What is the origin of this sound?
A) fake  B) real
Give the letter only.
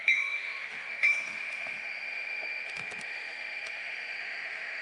A